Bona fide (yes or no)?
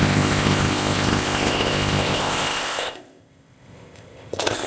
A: no